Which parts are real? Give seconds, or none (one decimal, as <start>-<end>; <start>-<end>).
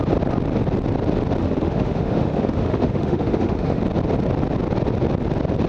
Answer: 0.0-1.4; 3.8-5.7